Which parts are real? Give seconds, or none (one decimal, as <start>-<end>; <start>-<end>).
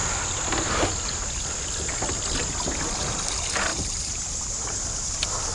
0.0-3.7; 5.1-5.5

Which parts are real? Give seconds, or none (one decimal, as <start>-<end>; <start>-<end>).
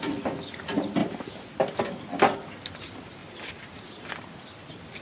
0.0-1.0; 1.8-3.2; 4.1-5.0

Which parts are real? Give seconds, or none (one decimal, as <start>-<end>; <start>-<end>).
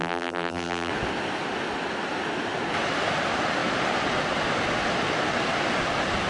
0.9-6.3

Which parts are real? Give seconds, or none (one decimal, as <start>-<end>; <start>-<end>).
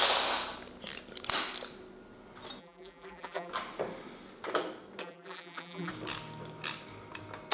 0.0-2.6; 3.5-5.0; 5.9-7.5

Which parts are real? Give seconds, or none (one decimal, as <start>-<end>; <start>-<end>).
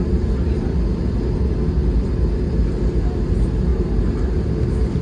0.0-3.7; 4.5-5.0